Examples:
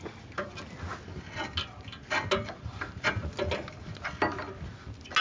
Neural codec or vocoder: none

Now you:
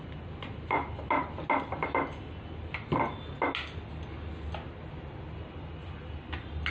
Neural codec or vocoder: none